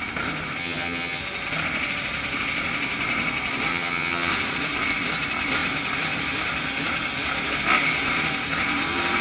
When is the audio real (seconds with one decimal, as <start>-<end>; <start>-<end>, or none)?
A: 0.0-0.6; 1.2-3.7; 4.3-9.2